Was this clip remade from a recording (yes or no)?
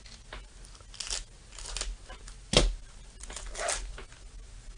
no